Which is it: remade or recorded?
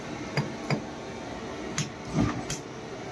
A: recorded